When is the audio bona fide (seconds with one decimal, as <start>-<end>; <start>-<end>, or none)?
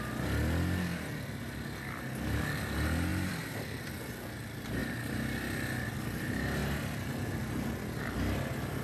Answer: 0.0-3.1; 3.9-4.8; 6.0-6.6; 7.1-8.8